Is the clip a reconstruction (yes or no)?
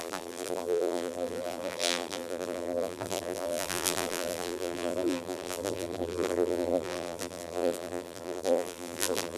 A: yes